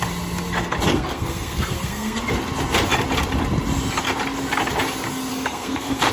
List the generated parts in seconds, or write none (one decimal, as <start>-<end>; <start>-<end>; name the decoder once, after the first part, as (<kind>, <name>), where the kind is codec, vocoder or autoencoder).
0.9-2.2 (codec, SNAC); 5.3-6.1